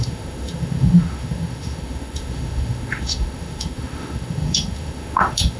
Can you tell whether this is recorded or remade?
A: remade